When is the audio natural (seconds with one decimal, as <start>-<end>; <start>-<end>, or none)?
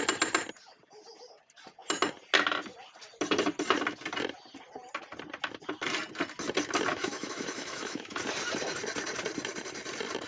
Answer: 0.0-6.9; 8.2-10.3